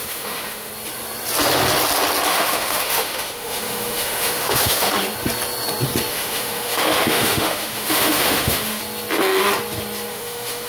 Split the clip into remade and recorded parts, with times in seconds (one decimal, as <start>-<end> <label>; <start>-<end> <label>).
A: 0.0-0.7 remade; 0.7-2.3 recorded; 2.3-4.9 remade; 4.9-6.1 recorded; 6.1-8.8 remade; 8.8-10.1 recorded; 10.1-10.7 remade